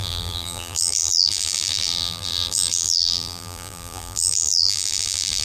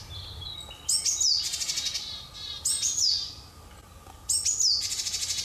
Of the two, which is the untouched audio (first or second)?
second